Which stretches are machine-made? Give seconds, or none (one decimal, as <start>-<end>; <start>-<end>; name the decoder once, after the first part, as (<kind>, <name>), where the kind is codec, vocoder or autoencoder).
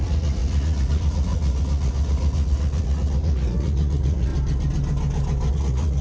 0.0-4.3 (vocoder, Vocos); 5.5-6.0